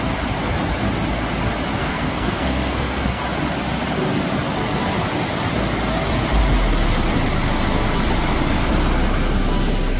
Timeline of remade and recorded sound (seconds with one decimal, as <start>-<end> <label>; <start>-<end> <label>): 0.0-1.8 recorded; 1.8-3.2 remade; 3.2-10.0 recorded